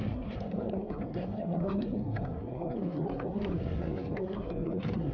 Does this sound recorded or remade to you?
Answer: remade